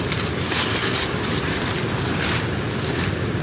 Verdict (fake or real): real